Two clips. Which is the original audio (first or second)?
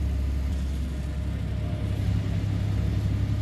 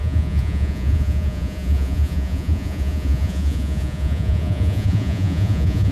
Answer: first